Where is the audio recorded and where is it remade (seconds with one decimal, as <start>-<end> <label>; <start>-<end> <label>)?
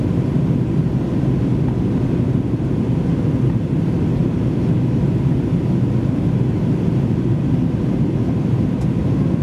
0.0-9.4 recorded